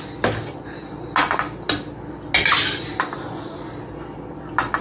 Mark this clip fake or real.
real